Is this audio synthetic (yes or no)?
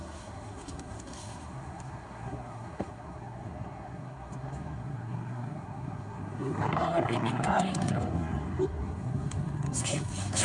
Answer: yes